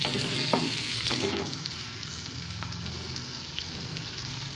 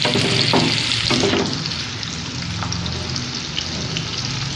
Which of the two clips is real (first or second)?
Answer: second